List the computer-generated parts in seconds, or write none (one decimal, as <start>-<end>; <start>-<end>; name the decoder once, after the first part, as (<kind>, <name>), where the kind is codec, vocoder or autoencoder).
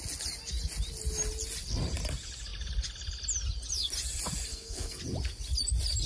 4.5-5.0 (codec, SNAC)